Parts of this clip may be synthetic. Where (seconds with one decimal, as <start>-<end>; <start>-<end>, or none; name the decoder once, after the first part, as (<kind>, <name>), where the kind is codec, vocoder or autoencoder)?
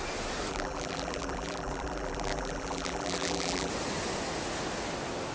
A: 0.5-3.7 (vocoder, BigVGAN v2)